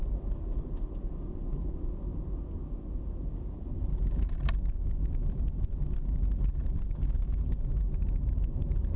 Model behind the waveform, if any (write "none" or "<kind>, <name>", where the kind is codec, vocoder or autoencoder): none